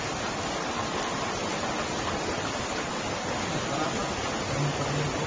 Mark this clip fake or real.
real